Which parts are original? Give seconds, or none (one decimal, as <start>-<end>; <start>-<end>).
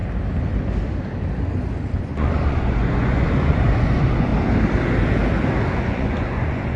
0.0-2.0; 4.3-5.7